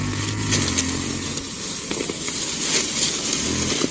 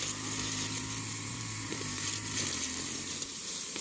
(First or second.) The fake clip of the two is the second